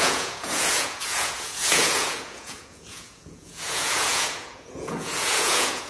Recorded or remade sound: remade